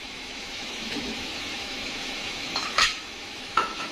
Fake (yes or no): yes